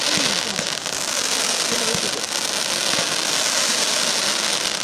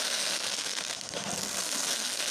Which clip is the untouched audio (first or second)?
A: first